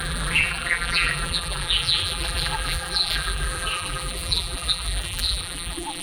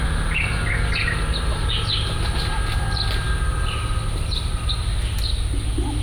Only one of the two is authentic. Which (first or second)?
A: second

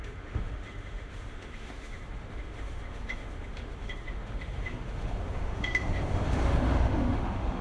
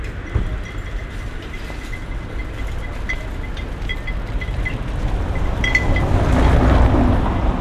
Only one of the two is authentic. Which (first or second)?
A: second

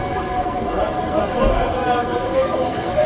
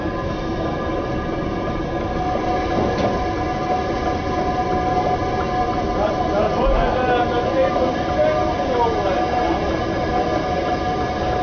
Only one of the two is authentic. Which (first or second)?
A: second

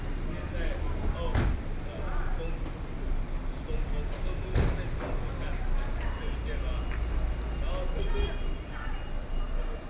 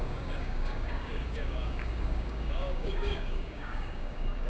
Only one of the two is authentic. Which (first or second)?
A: first